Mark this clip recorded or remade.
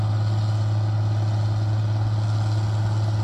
recorded